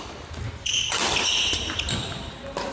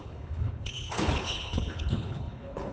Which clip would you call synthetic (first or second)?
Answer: second